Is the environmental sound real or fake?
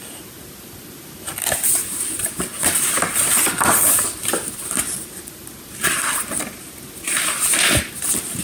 real